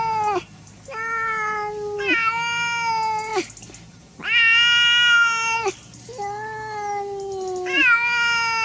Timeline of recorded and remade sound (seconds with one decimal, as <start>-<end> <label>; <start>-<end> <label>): 0.0-8.6 recorded